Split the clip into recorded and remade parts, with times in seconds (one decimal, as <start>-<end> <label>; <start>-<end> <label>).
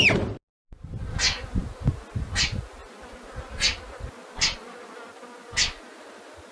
0.0-6.5 recorded